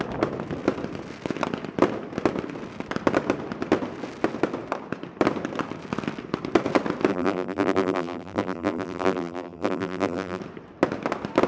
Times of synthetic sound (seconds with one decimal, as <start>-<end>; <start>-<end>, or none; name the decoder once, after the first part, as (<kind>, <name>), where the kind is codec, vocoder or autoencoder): 7.1-10.4 (vocoder, BigVGAN v2)